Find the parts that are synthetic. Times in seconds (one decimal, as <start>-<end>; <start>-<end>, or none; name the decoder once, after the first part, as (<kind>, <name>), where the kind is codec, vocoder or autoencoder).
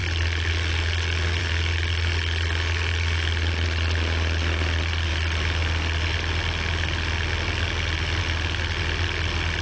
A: none